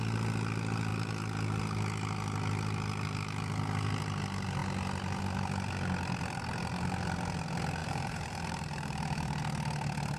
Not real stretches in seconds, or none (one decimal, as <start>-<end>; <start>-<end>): 7.8-9.4